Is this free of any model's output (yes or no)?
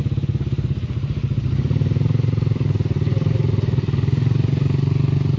yes